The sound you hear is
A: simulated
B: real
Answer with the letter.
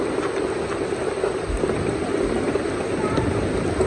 B